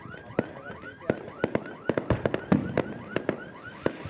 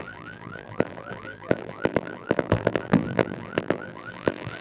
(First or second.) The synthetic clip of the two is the second